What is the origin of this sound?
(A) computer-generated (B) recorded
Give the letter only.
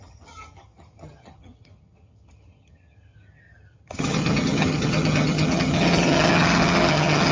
A